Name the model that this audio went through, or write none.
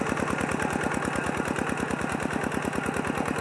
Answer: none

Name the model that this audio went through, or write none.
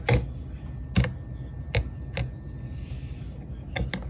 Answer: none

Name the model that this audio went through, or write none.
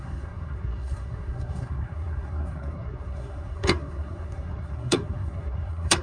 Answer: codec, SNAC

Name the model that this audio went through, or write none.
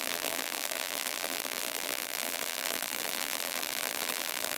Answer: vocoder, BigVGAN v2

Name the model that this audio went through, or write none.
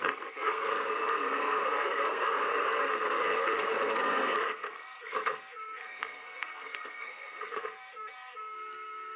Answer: codec, SNAC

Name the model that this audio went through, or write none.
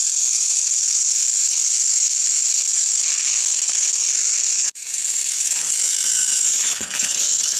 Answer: codec, SNAC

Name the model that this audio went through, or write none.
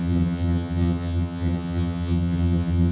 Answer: vocoder, HiFi-GAN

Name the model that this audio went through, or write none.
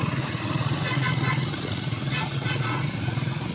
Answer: vocoder, Vocos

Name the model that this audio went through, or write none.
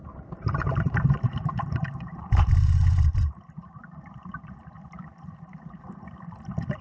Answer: vocoder, BigVGAN v2